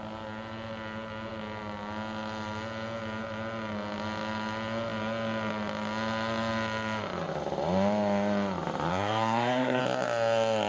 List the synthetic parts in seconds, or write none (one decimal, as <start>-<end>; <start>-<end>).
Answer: 8.9-9.8